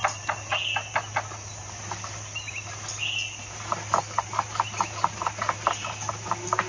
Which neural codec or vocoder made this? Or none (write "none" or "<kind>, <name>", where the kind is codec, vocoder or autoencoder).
none